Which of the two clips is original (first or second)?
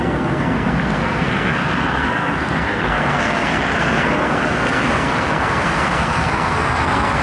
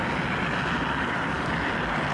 second